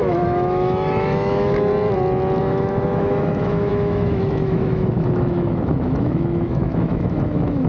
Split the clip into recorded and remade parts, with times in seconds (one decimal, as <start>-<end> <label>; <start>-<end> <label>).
0.0-1.7 remade; 1.7-2.4 recorded; 2.4-7.7 remade